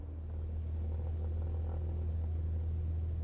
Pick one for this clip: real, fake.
real